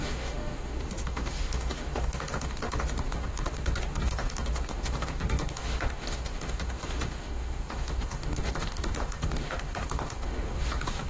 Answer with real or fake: fake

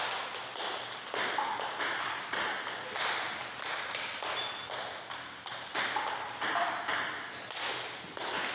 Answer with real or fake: real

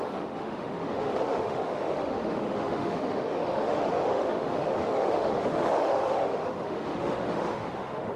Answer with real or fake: fake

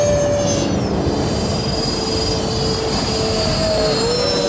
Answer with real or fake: real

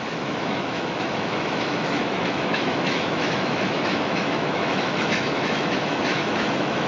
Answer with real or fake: fake